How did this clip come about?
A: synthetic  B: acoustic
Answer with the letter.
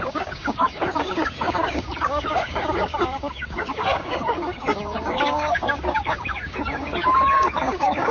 A